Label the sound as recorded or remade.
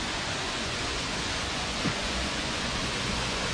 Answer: remade